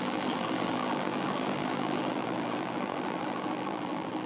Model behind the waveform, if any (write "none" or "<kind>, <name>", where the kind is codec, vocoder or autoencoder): vocoder, BigVGAN v2